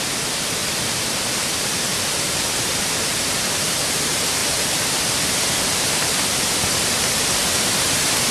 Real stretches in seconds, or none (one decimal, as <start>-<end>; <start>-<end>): 0.6-1.4

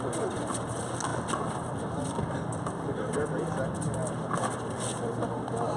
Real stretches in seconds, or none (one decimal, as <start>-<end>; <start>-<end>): 0.0-5.8

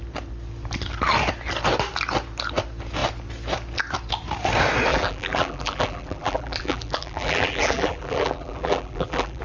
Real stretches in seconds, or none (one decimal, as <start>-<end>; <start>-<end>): 0.0-4.9

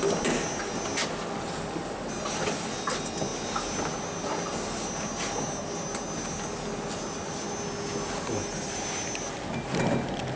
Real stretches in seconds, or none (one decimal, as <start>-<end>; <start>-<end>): 0.0-10.4

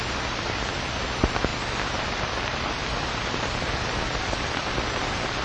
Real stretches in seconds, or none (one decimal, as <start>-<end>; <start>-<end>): none

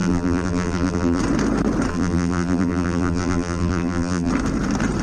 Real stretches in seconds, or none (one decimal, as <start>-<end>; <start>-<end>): 1.2-1.9; 4.3-5.0

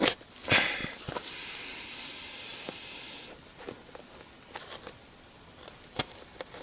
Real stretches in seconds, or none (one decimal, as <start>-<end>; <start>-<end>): 0.0-0.8; 1.3-6.6

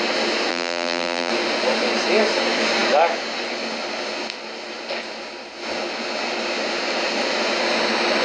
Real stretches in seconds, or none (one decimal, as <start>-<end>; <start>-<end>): 0.0-0.5; 1.3-8.2